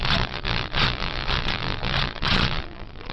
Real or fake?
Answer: fake